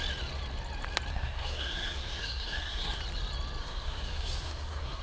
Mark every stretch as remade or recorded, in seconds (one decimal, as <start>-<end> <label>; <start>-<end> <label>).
0.0-1.1 recorded; 1.1-3.0 remade; 3.0-3.6 recorded; 3.6-5.0 remade